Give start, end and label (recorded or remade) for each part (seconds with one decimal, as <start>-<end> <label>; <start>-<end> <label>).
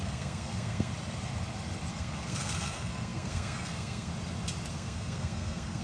0.0-0.9 remade; 0.9-1.9 recorded; 1.9-4.1 remade; 4.1-4.7 recorded; 4.7-5.8 remade